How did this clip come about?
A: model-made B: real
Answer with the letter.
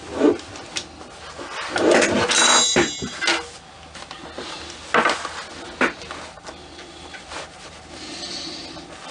B